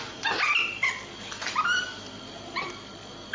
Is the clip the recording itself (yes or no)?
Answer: yes